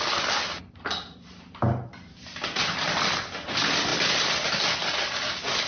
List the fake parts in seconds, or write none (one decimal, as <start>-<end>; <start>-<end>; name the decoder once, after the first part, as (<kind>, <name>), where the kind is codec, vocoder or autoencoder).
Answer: none